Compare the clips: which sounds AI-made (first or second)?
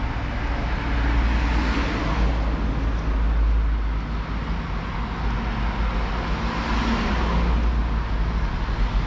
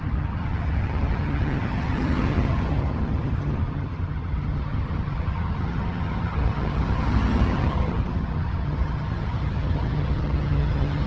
second